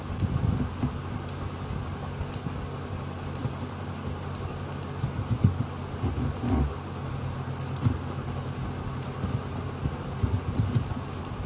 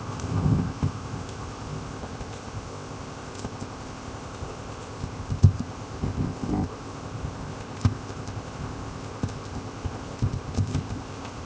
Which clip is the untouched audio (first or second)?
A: first